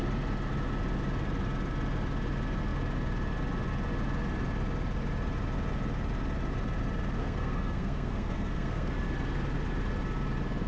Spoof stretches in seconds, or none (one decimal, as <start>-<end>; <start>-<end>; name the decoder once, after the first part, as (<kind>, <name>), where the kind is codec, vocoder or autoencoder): 7.2-8.9 (codec, SNAC)